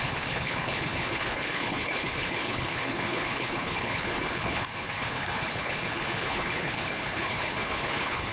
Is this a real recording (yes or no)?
no